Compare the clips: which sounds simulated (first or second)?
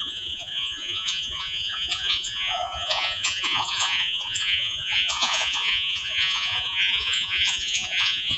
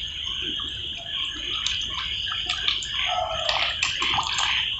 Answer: first